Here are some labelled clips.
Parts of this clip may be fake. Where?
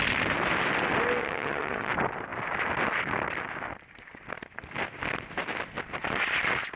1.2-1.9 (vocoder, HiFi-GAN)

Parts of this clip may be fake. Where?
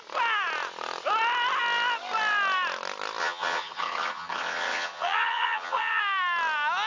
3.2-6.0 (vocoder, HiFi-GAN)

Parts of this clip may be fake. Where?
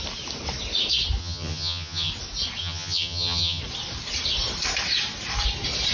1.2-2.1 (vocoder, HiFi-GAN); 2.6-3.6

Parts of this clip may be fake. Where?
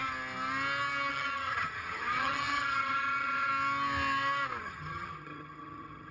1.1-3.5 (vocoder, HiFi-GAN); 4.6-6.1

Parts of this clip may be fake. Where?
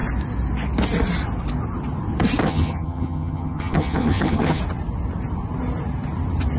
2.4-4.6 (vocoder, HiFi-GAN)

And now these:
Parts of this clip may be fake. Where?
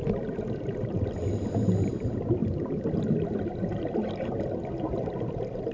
none